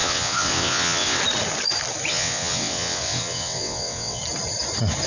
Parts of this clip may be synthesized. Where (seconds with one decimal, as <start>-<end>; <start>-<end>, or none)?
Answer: 0.0-1.2; 2.1-4.2